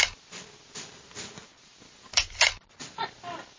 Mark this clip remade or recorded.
recorded